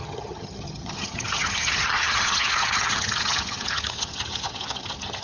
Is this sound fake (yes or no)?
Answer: yes